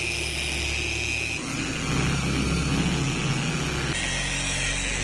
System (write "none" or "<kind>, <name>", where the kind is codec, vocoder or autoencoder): none